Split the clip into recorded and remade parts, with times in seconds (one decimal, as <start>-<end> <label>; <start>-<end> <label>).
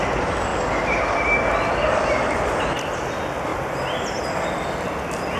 0.0-5.4 recorded